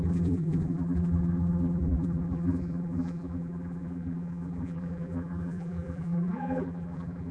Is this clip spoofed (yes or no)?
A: yes